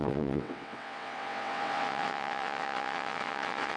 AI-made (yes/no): yes